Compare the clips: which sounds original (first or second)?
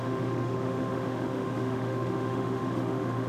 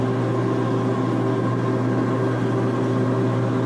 second